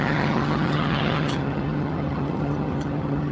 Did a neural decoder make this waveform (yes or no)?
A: yes